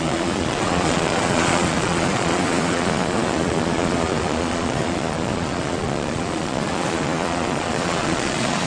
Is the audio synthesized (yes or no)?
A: yes